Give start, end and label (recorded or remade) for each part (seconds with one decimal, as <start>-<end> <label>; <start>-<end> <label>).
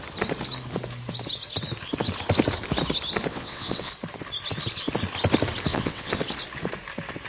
0.0-3.3 recorded; 3.3-3.9 remade; 3.9-5.7 recorded; 5.7-6.2 remade; 6.2-7.3 recorded